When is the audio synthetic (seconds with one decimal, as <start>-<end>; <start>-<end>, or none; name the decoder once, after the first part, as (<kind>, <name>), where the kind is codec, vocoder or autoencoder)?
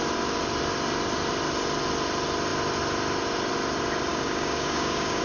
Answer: 4.1-5.2 (codec, DAC)